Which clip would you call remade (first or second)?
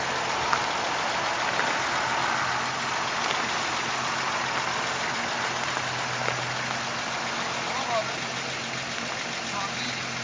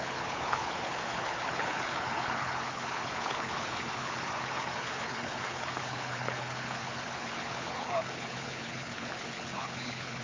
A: second